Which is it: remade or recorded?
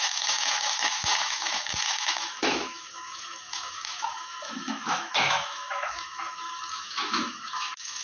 remade